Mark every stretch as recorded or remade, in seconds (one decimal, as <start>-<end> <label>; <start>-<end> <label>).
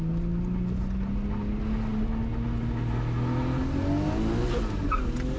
0.0-5.4 recorded